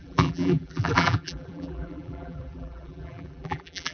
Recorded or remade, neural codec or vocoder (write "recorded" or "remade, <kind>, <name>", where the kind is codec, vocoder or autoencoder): remade, vocoder, BigVGAN v2